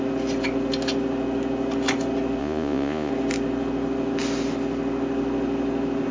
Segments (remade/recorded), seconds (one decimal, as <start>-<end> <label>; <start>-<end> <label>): 0.0-2.4 recorded; 2.4-3.1 remade; 3.1-6.1 recorded